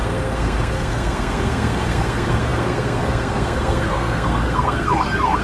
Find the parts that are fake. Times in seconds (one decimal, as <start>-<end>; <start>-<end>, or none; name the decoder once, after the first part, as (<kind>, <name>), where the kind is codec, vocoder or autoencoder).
0.0-5.4 (codec, SNAC)